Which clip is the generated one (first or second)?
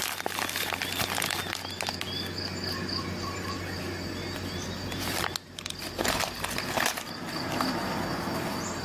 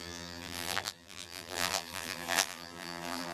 second